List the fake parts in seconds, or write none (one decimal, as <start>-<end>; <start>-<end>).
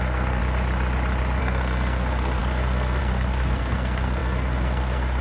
0.0-0.4; 1.4-5.2